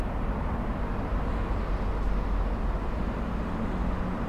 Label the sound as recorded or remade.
recorded